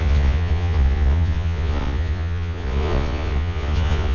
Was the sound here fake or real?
fake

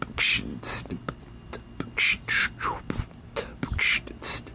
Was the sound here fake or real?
real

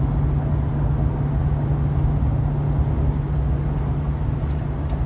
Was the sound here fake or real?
real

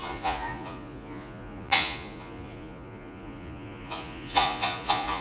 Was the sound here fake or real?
fake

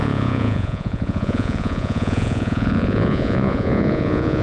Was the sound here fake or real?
fake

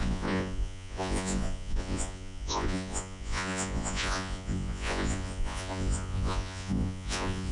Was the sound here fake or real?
fake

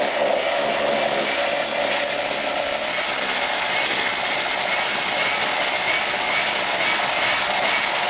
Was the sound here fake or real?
real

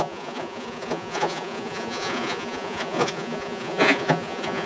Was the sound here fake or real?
fake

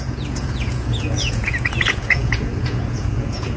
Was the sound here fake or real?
fake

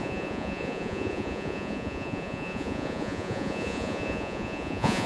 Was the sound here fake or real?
fake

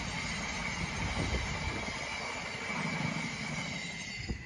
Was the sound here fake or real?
real